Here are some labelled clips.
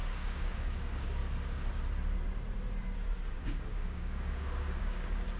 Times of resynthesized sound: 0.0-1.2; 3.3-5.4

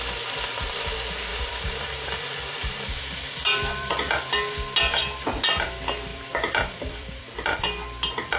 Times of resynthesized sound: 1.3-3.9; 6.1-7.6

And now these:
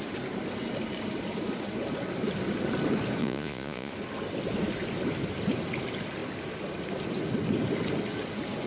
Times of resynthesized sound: 3.2-3.9

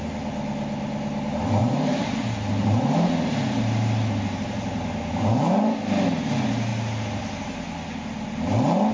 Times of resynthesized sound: 1.6-3.1